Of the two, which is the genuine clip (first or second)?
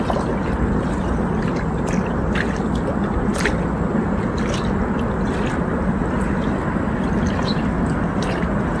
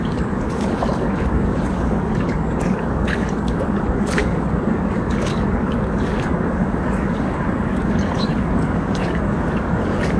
first